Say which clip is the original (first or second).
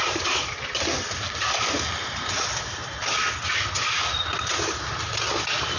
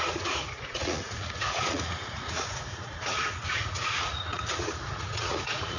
first